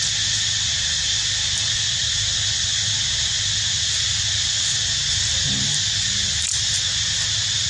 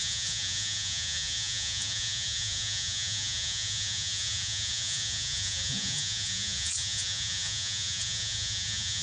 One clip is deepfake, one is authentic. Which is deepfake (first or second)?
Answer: second